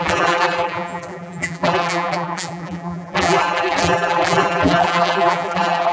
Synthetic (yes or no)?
yes